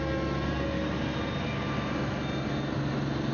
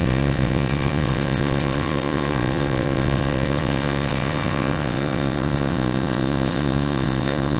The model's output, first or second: second